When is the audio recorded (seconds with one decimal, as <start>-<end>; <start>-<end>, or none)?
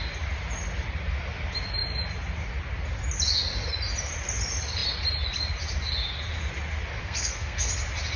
0.0-7.0; 7.7-8.2